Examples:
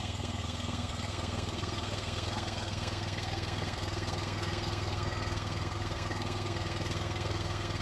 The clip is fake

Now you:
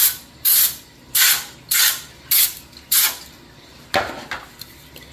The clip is real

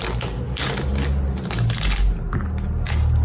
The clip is real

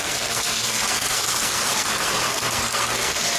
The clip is fake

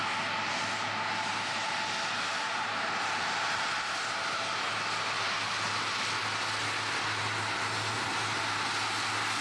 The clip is real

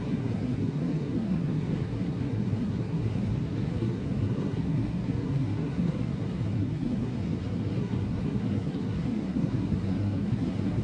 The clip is fake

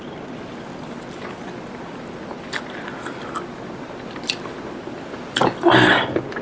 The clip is real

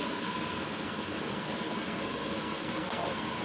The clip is fake